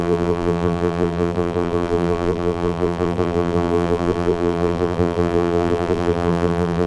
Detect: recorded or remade remade